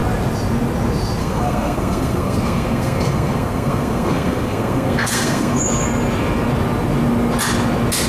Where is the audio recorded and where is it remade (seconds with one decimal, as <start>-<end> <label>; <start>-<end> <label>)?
0.0-1.2 recorded; 1.2-5.6 remade; 5.6-8.1 recorded

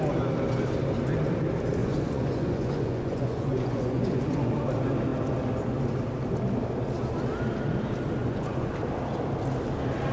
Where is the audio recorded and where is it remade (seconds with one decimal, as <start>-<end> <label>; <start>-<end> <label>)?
0.0-1.8 recorded; 1.8-4.5 remade; 4.5-8.2 recorded; 8.2-8.7 remade; 8.7-10.1 recorded

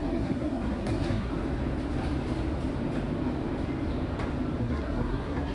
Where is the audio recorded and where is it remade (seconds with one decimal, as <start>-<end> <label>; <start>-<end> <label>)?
0.0-1.3 remade; 1.3-4.6 recorded; 4.6-5.5 remade

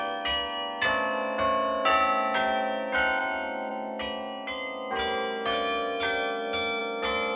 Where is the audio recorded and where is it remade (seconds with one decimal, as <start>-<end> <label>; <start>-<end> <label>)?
0.0-7.4 recorded

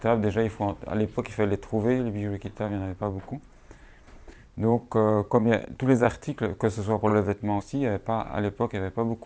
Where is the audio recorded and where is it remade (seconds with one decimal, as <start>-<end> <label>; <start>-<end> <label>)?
0.0-2.5 recorded; 2.5-6.1 remade; 6.1-9.3 recorded

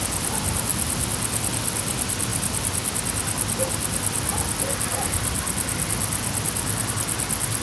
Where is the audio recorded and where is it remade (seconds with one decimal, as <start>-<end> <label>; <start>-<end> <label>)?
0.0-7.6 recorded

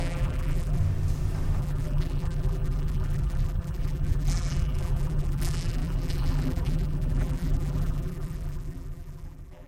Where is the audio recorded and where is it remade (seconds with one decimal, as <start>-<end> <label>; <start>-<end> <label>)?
0.0-0.8 remade; 0.8-1.6 recorded; 1.6-9.7 remade